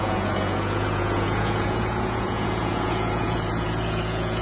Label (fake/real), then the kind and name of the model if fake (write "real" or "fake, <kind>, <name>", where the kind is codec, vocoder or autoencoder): fake, vocoder, Vocos